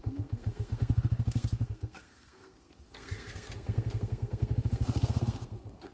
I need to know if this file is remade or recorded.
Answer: remade